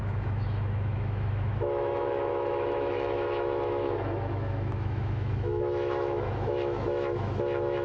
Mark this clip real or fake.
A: fake